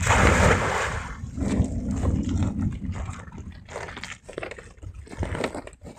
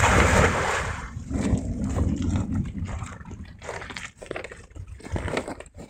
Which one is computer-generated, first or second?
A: second